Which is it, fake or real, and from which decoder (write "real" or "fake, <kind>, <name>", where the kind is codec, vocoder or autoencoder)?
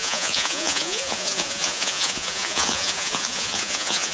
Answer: fake, vocoder, Vocos